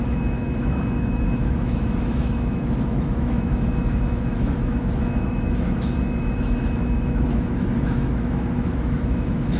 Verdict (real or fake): fake